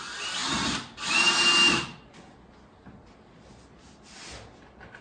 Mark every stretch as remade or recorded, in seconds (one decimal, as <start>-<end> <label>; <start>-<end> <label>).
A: 0.0-5.0 recorded

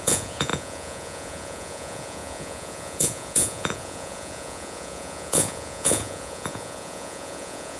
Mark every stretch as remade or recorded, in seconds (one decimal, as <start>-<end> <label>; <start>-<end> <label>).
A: 0.0-7.8 remade

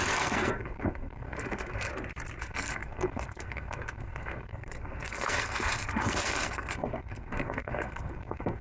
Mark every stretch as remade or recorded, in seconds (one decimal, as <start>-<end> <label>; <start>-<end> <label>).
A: 0.0-1.9 remade; 1.9-2.4 recorded; 2.4-8.6 remade

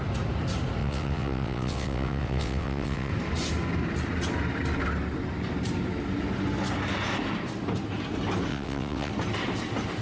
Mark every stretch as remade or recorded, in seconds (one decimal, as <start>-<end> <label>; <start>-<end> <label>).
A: 0.0-0.8 recorded; 0.8-3.1 remade; 3.1-8.5 recorded; 8.5-9.1 remade; 9.1-10.0 recorded

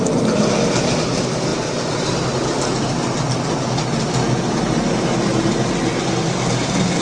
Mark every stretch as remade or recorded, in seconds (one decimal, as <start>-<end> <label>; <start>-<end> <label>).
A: 0.0-7.0 recorded